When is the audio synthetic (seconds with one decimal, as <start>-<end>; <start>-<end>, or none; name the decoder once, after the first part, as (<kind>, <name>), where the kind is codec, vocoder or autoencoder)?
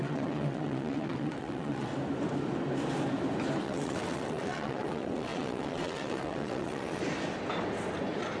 0.0-1.9 (vocoder, WaveNeXt); 3.6-7.0